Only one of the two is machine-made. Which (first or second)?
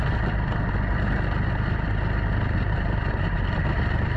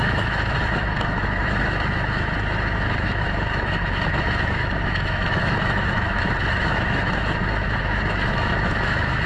second